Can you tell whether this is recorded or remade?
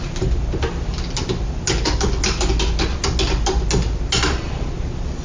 recorded